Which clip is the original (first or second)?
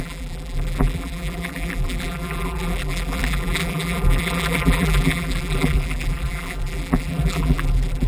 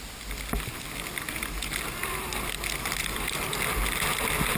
second